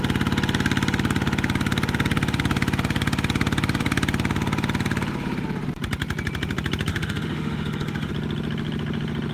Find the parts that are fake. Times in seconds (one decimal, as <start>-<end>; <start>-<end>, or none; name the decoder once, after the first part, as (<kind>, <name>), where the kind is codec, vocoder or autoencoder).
6.9-8.1 (autoencoder, DAC-VAE)